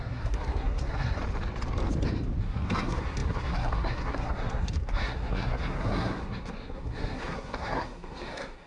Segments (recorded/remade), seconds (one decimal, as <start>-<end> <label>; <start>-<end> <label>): 0.0-1.2 remade; 1.2-2.4 recorded; 2.4-8.7 remade